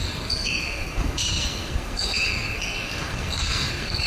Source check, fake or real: fake